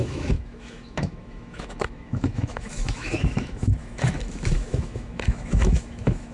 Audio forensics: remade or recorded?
remade